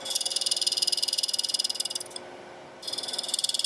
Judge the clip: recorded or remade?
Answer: recorded